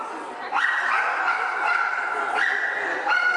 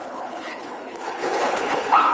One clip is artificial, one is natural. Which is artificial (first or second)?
second